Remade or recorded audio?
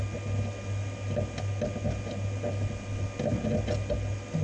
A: recorded